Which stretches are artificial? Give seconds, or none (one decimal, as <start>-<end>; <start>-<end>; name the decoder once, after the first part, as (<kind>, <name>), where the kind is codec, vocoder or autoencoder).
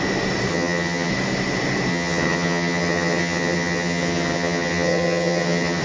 0.5-1.1 (vocoder, HiFi-GAN); 1.9-5.8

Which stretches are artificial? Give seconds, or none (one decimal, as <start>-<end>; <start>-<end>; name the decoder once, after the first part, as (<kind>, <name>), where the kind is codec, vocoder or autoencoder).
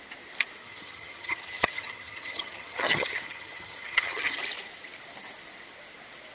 0.6-4.4 (vocoder, HiFi-GAN)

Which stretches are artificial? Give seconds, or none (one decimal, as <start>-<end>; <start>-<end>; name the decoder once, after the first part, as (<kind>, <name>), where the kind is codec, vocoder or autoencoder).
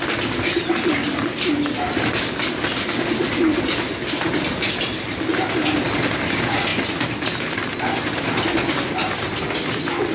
none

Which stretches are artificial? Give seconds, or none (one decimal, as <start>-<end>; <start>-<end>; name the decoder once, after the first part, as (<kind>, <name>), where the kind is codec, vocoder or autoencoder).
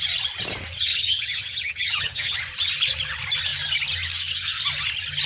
0.9-2.4 (vocoder, HiFi-GAN)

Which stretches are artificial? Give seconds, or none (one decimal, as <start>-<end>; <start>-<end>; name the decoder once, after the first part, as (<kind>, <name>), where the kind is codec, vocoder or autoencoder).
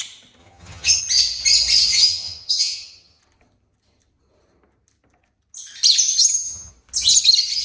0.4-1.0 (vocoder, HiFi-GAN); 1.9-3.2; 6.1-6.7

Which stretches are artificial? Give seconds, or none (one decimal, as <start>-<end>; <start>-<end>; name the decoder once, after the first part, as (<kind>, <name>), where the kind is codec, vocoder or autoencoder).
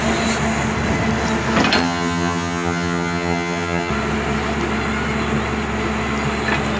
1.8-3.9 (vocoder, HiFi-GAN)